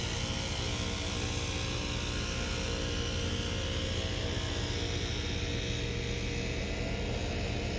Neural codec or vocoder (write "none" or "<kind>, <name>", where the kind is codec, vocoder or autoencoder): none